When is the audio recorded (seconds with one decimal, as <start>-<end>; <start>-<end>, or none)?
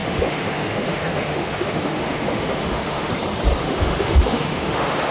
3.1-3.6